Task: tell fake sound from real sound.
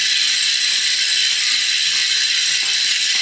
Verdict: fake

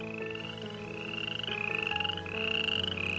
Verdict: real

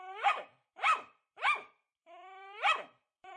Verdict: fake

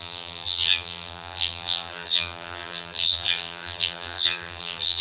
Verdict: fake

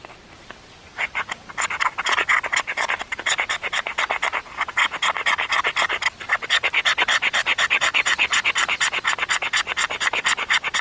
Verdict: real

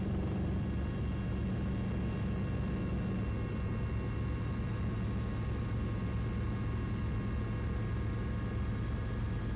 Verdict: real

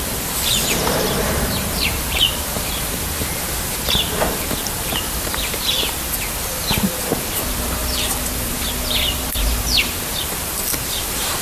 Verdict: fake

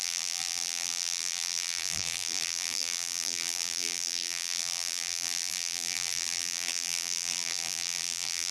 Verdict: fake